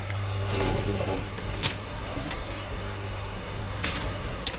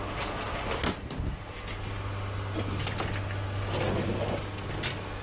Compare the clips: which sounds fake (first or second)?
first